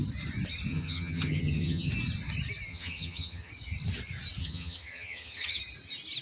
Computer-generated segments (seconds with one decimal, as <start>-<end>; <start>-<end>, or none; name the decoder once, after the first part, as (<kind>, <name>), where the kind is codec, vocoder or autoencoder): 0.7-1.9 (vocoder, HiFi-GAN); 2.7-3.5; 4.4-5.6